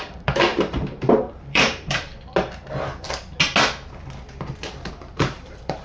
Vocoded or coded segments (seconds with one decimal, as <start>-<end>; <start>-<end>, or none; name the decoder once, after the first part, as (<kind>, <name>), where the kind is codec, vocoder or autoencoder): 0.0-2.1 (vocoder, BigVGAN v2); 4.9-5.8

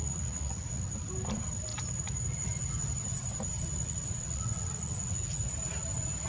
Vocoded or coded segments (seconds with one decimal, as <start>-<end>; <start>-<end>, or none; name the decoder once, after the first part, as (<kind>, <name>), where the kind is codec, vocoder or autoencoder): 0.0-0.8 (vocoder, Vocos); 3.8-5.4